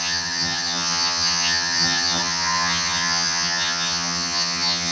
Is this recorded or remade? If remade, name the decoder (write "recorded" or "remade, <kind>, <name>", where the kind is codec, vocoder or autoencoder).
remade, vocoder, HiFi-GAN